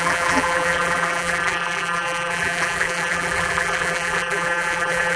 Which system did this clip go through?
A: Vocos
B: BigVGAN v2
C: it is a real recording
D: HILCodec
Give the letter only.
B